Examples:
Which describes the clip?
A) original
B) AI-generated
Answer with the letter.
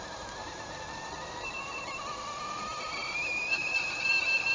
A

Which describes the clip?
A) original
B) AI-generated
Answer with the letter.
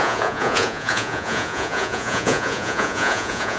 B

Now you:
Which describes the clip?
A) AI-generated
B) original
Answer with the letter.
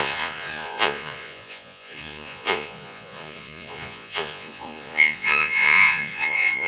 A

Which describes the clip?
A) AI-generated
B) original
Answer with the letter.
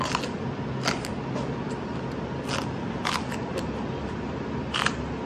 B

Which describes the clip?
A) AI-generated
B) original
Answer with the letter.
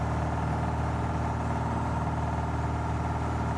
B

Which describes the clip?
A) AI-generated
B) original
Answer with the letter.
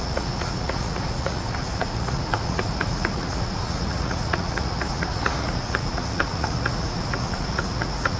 A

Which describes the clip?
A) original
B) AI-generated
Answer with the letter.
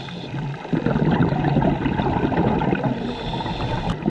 A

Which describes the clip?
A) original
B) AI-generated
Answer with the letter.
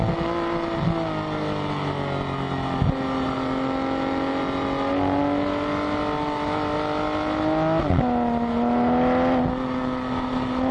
A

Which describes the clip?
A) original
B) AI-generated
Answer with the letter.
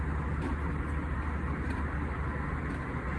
A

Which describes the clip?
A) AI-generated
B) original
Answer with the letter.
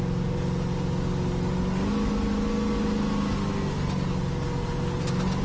B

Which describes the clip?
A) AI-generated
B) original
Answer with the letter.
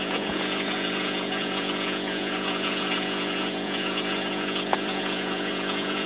A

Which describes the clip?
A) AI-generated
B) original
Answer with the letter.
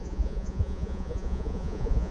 A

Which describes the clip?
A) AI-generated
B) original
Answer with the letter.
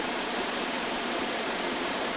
A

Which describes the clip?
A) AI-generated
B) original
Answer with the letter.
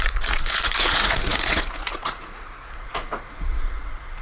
A